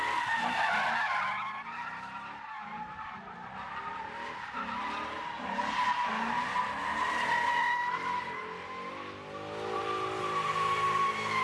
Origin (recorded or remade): recorded